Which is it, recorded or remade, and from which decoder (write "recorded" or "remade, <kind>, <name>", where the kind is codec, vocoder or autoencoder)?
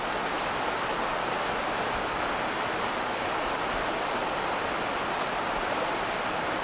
recorded